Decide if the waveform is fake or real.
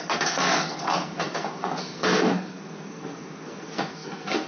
fake